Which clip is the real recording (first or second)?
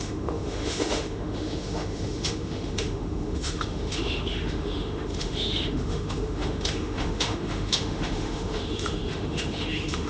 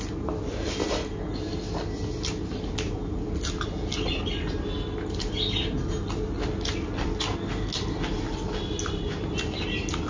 second